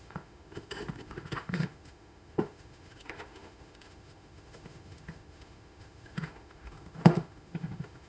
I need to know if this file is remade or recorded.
remade